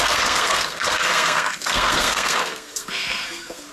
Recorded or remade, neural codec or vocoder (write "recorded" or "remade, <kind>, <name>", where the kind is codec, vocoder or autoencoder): remade, codec, SNAC